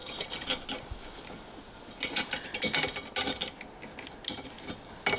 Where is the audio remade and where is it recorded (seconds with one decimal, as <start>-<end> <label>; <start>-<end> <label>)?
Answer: 0.0-5.2 recorded